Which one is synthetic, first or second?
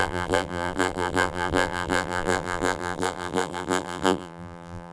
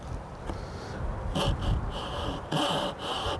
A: first